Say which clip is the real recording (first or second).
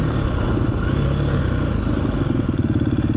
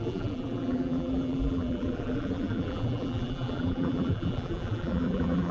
first